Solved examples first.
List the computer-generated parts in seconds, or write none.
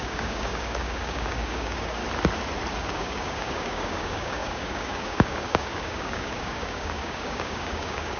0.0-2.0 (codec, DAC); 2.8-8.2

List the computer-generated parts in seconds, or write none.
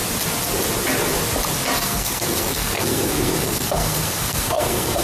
1.8-5.0 (codec, SNAC)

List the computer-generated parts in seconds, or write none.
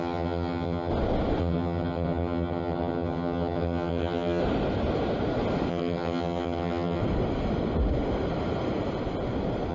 0.0-0.9 (vocoder, HiFi-GAN); 1.4-4.4; 5.7-7.0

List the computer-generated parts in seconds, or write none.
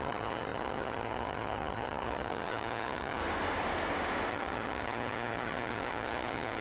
0.0-3.2 (vocoder, HiFi-GAN); 4.3-6.6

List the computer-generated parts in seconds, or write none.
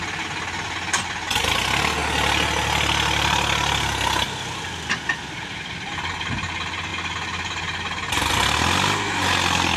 none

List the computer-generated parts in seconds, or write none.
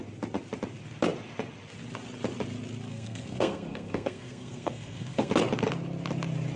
2.9-5.3 (codec, SNAC)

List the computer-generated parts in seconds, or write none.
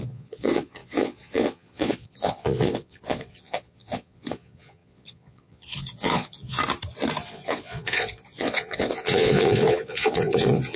0.0-6.6 (vocoder, Vocos); 7.3-10.8